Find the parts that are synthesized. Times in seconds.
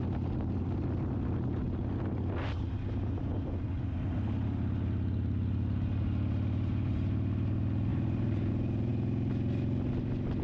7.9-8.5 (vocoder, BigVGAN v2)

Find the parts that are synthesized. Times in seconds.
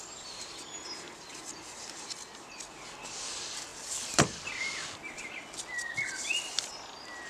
none